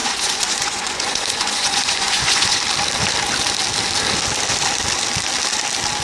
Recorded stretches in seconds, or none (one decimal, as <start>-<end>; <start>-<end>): 2.6-6.0